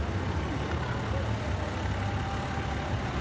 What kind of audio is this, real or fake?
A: real